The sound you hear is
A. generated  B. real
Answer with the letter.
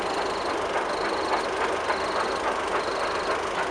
B